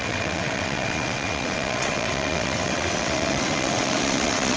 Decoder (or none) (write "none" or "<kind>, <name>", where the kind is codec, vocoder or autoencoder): vocoder, WaveNeXt